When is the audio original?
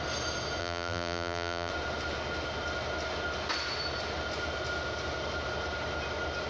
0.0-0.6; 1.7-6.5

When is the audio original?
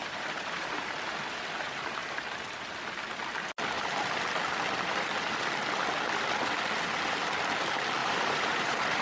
0.9-8.0